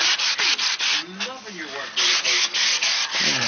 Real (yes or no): yes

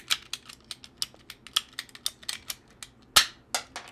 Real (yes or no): yes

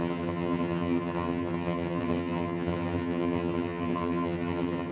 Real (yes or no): no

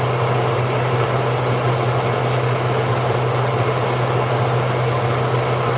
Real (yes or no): yes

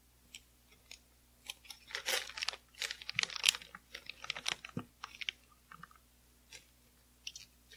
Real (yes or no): yes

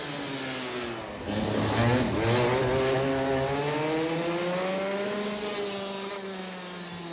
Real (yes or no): yes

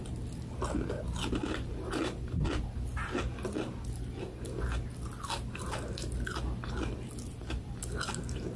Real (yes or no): yes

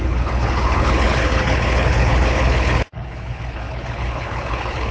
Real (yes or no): no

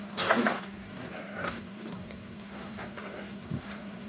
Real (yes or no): no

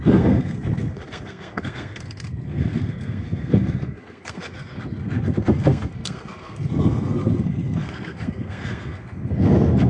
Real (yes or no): no